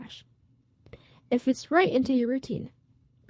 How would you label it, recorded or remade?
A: remade